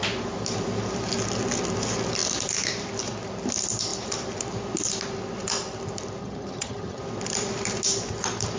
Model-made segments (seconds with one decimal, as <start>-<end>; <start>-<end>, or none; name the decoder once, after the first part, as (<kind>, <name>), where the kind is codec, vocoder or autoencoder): 6.2-7.0 (vocoder, HiFi-GAN)